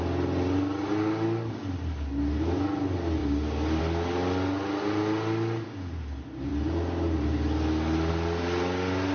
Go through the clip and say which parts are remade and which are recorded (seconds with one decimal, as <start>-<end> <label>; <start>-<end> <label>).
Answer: 0.0-9.1 recorded

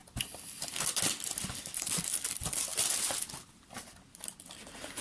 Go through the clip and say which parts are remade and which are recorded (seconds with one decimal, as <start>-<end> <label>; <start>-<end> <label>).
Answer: 0.0-5.0 remade

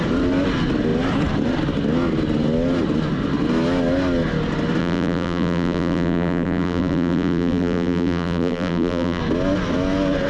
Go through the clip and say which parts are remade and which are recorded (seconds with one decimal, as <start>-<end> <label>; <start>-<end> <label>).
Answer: 0.0-4.8 recorded; 4.8-9.2 remade; 9.2-10.3 recorded